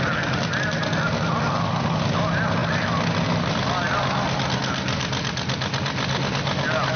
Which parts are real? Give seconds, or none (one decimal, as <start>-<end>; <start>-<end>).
0.0-7.0